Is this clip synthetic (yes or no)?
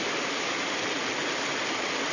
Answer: no